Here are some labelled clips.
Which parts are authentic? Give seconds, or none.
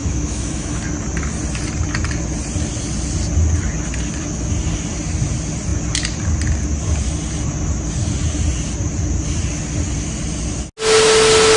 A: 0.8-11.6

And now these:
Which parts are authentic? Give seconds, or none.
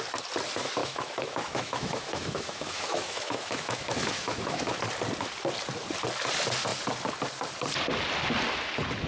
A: 0.0-0.8; 4.8-9.1